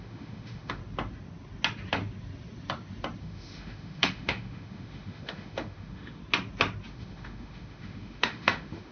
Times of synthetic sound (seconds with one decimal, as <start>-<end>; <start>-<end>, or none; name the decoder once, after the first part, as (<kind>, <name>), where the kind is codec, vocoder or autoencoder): 0.0-0.8 (autoencoder, DAC-VAE); 3.2-6.2; 6.9-8.9